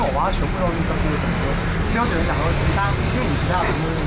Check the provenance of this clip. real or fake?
real